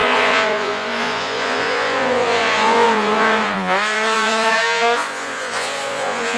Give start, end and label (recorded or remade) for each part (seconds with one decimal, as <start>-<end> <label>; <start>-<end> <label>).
0.0-6.4 remade